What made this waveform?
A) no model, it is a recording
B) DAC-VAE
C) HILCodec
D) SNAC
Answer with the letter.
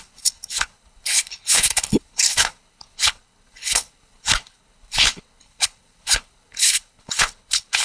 C